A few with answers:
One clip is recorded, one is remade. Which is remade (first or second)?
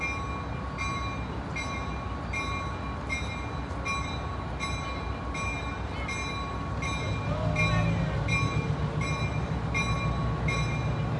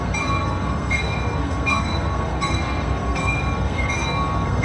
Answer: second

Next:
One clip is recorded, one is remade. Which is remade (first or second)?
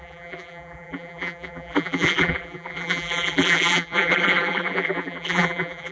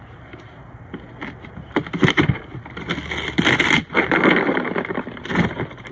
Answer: first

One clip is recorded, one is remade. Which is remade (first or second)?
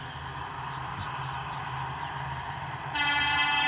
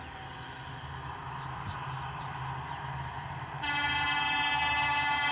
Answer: first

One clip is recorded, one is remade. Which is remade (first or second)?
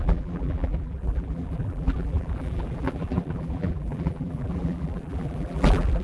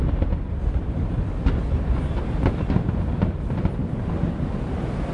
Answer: first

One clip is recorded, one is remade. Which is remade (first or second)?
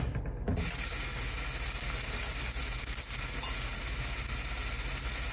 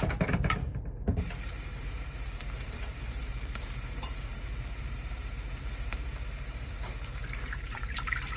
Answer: second